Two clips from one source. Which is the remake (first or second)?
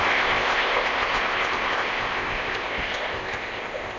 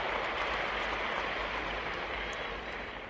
first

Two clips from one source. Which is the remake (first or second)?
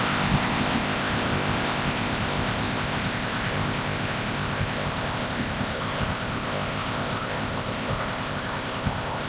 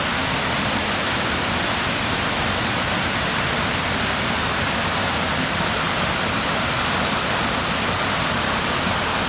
first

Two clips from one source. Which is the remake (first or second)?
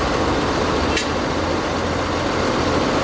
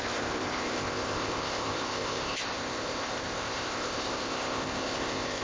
second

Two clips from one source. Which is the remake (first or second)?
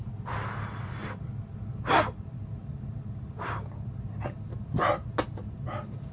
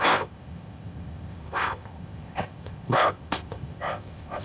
second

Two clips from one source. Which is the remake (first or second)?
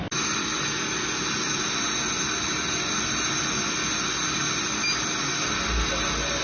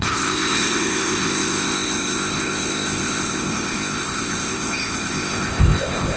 second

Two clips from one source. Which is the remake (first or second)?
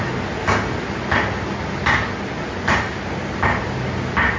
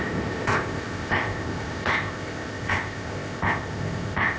second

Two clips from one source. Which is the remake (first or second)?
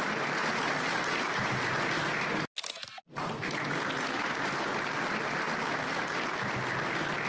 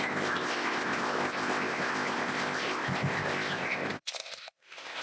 second